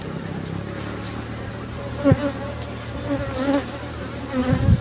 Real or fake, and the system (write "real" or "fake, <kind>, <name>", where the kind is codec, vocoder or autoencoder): real